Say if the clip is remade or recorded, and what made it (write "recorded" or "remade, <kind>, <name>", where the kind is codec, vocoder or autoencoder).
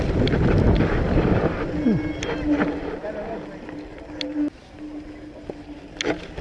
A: recorded